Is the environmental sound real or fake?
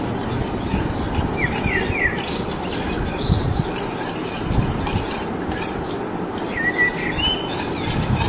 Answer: real